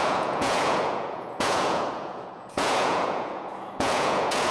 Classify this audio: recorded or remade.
remade